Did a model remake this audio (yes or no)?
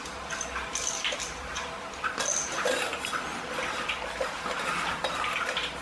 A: no